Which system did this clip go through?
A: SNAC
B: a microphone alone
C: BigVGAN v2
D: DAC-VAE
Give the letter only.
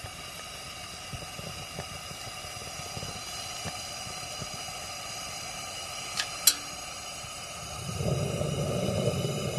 B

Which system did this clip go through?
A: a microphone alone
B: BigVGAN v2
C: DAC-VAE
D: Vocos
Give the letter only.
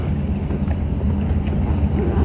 A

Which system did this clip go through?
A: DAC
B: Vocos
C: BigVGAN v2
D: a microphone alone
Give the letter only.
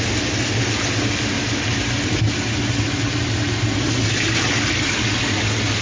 D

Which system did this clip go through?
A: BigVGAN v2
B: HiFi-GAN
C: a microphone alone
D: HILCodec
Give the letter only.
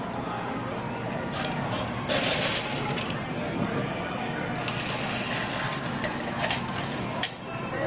C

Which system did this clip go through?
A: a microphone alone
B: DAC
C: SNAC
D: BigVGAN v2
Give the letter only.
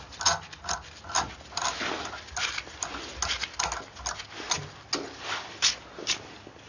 A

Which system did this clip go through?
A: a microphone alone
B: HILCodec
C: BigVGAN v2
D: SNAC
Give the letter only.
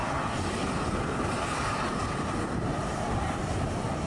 A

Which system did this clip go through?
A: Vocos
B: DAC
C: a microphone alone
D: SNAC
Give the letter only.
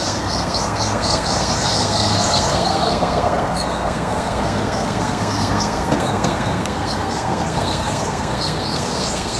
D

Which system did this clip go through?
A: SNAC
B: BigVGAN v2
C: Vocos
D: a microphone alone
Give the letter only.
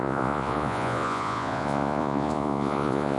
C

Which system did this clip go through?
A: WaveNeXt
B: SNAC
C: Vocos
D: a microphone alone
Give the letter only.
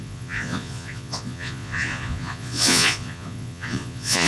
C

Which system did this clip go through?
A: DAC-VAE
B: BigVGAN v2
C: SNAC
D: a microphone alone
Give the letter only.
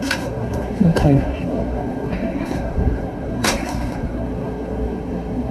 C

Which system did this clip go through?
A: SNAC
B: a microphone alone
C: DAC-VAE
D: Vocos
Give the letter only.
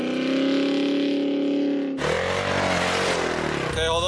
B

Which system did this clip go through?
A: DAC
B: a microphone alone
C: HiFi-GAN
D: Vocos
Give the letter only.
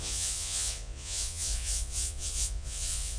D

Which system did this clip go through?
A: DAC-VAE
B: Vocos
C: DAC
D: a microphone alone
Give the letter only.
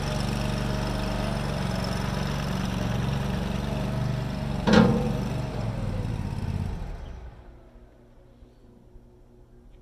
D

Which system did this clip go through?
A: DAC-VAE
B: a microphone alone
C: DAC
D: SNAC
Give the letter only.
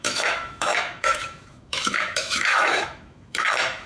A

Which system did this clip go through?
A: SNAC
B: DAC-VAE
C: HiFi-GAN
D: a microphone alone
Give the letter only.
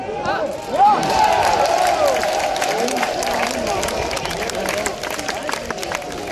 D